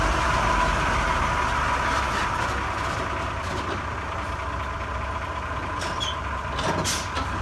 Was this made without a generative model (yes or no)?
yes